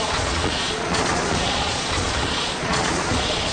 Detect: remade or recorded remade